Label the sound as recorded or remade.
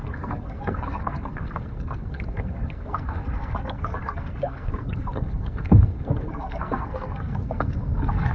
remade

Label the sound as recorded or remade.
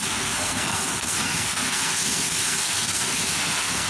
remade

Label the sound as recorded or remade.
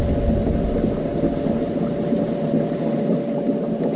recorded